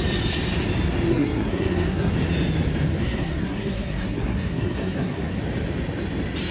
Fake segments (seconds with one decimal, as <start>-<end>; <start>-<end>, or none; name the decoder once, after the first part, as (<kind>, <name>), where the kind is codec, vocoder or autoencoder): 1.1-2.1 (codec, SNAC); 3.0-5.4